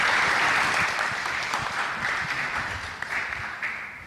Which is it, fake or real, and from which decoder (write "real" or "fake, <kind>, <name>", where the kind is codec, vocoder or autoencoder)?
fake, vocoder, BigVGAN v2